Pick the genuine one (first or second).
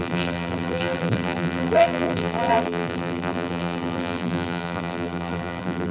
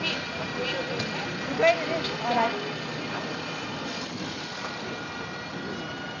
second